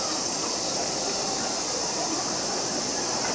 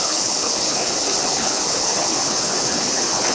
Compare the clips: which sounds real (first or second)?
first